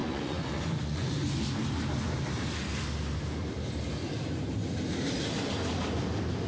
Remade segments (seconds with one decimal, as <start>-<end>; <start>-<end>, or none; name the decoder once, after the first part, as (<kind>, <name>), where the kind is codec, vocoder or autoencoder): 0.0-1.2 (vocoder, Vocos)